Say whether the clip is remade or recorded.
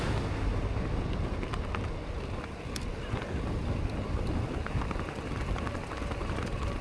recorded